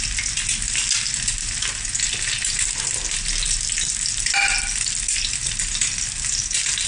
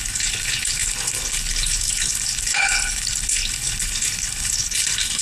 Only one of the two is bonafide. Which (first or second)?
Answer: first